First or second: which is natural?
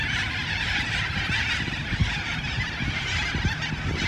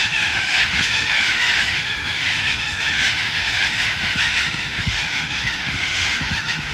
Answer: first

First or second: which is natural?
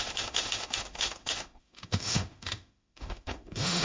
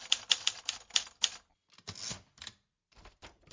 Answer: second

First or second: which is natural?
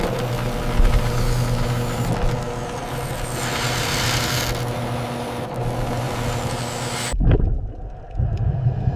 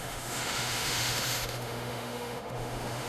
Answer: first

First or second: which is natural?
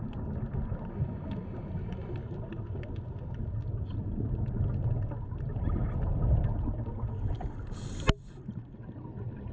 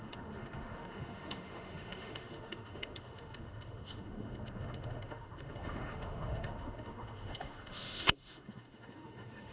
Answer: first